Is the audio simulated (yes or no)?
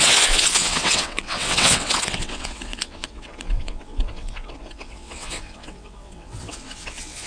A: yes